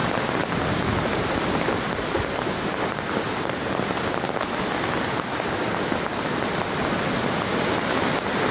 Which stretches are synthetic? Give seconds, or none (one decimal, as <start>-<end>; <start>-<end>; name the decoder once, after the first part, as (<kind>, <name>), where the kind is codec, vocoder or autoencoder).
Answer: none